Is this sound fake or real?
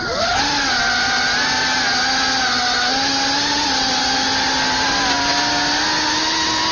real